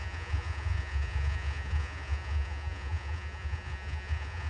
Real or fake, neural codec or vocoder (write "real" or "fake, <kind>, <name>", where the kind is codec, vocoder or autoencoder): fake, vocoder, Vocos